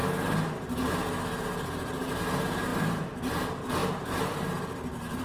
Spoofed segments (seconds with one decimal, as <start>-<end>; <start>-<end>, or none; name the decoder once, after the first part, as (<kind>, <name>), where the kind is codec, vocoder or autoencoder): 2.2-5.2 (vocoder, BigVGAN v2)